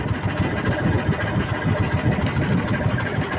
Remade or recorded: recorded